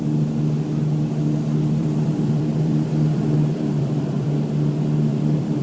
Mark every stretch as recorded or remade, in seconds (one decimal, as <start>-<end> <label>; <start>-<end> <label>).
0.0-1.8 recorded; 1.8-5.6 remade